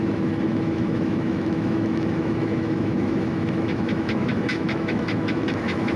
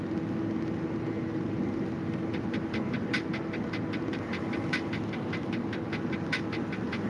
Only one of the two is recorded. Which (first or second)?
second